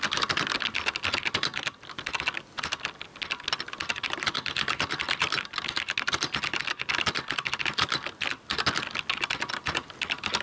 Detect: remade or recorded recorded